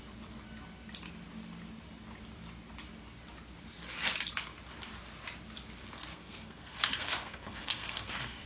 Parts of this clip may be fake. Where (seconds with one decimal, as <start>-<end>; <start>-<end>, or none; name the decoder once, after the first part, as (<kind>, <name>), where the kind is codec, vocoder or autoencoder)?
6.1-8.5 (codec, SNAC)

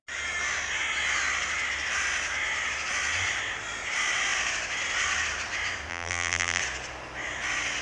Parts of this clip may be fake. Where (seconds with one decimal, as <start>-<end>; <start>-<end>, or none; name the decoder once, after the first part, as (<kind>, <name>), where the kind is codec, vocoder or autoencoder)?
5.9-6.6 (vocoder, BigVGAN v2)

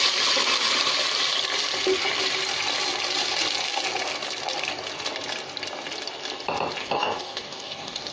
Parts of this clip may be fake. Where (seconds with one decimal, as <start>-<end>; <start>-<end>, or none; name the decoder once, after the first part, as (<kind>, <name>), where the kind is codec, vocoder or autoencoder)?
6.8-8.1 (codec, DAC)

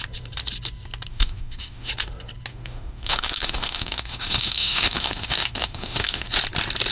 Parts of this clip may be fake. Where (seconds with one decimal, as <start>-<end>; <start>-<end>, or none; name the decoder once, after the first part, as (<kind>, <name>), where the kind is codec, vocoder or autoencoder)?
1.1-1.9 (autoencoder, DAC-VAE); 2.5-6.3